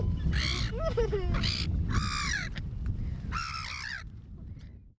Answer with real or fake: real